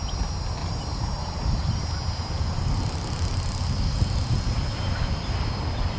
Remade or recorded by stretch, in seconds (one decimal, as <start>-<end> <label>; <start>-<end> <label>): 0.0-0.6 recorded; 0.6-1.8 remade; 1.8-6.0 recorded